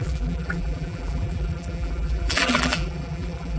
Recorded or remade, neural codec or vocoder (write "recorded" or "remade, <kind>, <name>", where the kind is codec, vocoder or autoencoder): remade, vocoder, BigVGAN v2